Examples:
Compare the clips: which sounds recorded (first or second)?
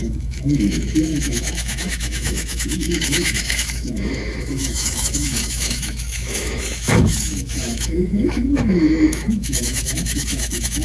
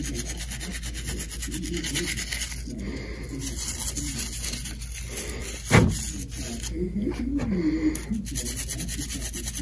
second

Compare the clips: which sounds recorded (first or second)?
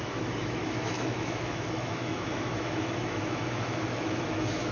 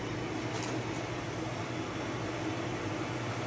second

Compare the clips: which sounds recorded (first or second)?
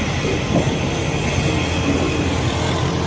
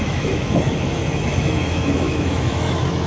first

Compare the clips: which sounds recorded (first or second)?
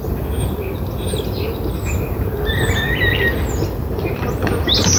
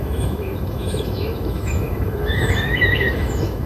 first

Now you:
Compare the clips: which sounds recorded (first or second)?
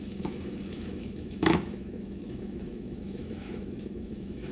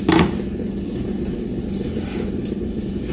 second